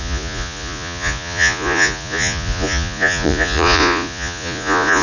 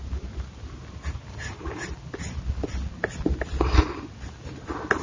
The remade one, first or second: first